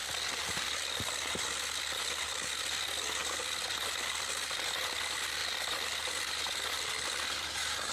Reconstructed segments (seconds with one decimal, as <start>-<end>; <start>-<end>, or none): 0.0-7.9